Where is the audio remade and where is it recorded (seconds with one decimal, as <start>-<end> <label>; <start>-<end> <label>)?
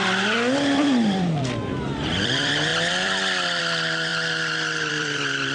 0.0-4.1 remade; 4.1-4.9 recorded; 4.9-5.5 remade